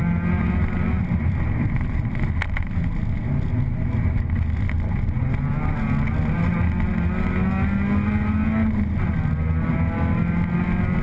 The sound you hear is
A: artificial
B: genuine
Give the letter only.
B